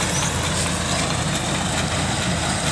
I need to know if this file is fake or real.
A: real